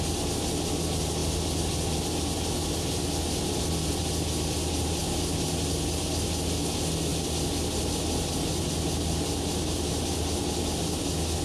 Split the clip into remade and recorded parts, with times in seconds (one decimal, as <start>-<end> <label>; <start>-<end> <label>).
0.0-11.4 recorded